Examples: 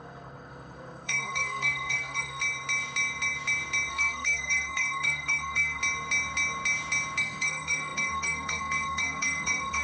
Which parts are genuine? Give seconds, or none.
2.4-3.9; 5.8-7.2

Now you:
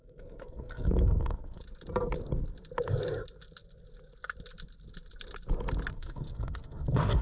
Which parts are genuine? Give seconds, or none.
1.6-5.9

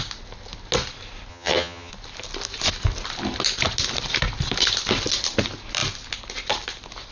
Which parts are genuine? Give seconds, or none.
0.0-1.3; 1.9-7.1

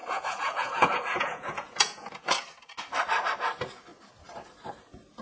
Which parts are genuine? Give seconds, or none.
2.3-5.2

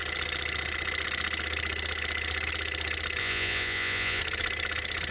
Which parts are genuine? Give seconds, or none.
0.0-3.2; 4.2-5.1